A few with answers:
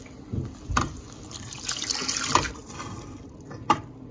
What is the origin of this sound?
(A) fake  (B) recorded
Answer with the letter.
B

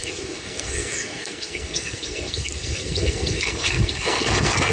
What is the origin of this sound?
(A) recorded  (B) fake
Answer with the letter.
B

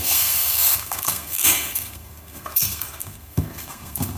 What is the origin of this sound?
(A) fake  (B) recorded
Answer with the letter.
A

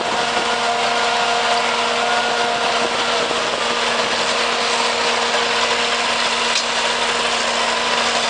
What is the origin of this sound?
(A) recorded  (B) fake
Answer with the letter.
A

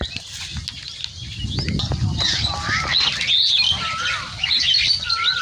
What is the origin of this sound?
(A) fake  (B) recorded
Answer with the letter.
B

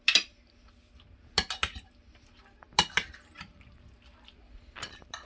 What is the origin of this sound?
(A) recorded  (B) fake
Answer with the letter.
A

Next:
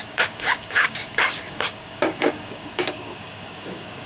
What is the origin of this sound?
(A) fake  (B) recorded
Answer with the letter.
A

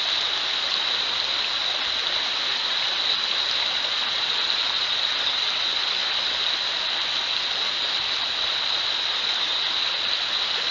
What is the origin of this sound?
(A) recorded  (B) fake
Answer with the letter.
A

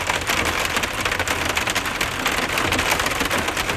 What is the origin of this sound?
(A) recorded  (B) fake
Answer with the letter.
A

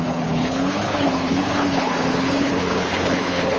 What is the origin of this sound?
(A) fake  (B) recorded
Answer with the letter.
A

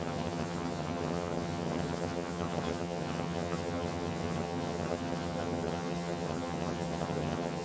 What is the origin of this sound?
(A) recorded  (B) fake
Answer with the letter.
B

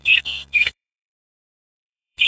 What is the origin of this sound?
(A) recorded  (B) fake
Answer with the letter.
B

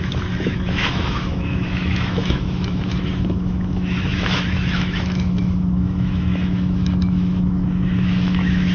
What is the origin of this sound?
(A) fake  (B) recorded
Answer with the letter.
A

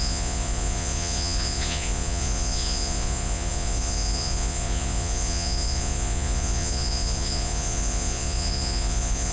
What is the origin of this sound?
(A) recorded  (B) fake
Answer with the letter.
B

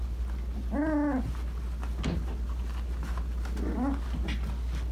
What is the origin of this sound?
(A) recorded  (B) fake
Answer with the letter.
A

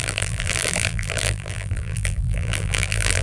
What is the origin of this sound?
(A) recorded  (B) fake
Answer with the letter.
B